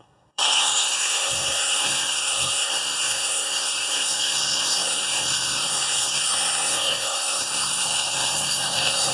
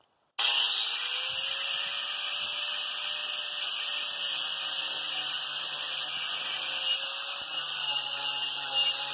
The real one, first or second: second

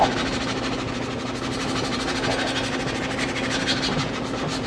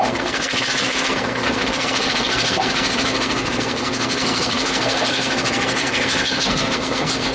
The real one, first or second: first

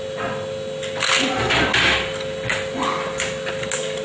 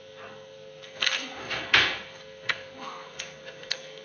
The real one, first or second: first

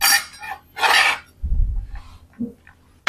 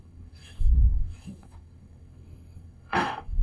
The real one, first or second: first